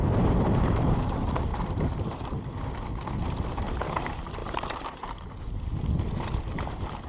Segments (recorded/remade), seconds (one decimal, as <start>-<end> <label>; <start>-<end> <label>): 0.0-1.0 remade; 1.0-1.5 recorded; 1.5-2.2 remade; 2.2-4.4 recorded; 4.4-5.1 remade; 5.1-7.1 recorded